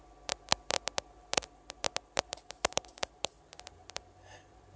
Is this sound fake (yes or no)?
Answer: no